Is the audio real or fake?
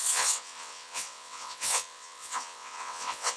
fake